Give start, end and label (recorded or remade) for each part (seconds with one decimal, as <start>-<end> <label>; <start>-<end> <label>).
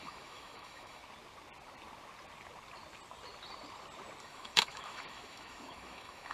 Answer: 0.0-1.0 remade; 1.0-4.2 recorded; 4.2-6.3 remade